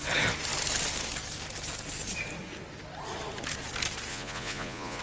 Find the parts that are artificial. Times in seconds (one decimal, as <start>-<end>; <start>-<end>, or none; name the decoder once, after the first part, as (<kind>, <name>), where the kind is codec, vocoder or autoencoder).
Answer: 4.1-5.0 (vocoder, Vocos)